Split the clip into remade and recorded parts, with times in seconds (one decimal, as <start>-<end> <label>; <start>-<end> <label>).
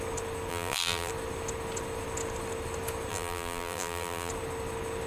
0.0-0.5 recorded; 0.5-1.1 remade; 1.1-3.1 recorded; 3.1-4.3 remade; 4.3-5.1 recorded